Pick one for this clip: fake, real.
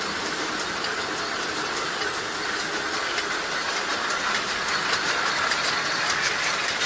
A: real